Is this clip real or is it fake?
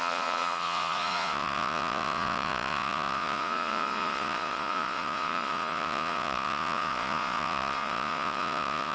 fake